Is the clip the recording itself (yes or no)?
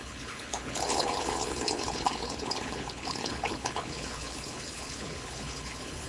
no